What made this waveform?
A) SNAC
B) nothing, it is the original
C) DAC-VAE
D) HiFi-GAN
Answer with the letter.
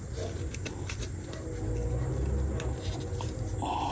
B